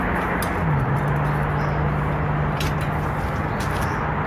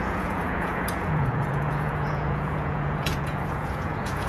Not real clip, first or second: second